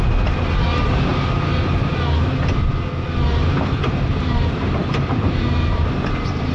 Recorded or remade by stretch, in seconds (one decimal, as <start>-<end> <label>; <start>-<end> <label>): 0.0-1.1 recorded; 1.1-1.9 remade; 1.9-3.3 recorded; 3.3-5.8 remade; 5.8-6.5 recorded